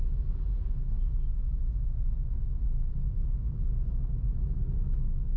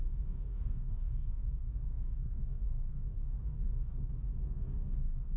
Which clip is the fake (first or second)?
second